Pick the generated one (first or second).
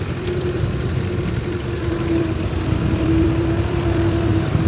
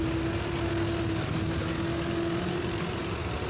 first